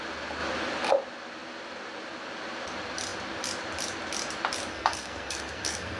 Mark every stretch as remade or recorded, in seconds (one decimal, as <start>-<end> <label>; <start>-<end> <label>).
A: 0.0-4.7 recorded; 4.7-6.0 remade